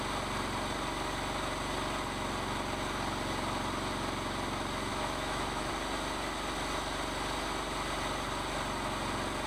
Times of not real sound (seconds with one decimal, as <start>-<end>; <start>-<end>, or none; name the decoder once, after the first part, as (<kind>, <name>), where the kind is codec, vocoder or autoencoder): 4.9-5.7 (autoencoder, DAC-VAE)